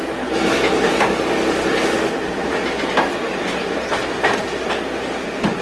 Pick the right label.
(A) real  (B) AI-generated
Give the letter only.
A